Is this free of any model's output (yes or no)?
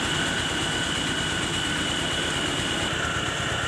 yes